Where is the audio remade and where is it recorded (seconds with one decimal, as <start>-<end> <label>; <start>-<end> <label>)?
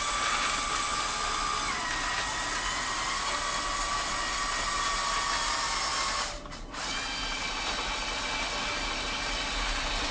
0.0-10.1 recorded